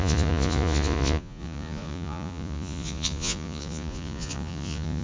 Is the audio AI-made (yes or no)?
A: yes